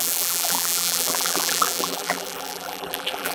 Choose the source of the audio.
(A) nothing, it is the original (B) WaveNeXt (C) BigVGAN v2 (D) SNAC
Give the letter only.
C